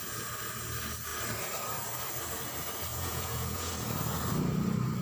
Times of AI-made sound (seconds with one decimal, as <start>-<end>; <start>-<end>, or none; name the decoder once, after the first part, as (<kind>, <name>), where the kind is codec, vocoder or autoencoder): 2.9-3.7 (vocoder, Vocos)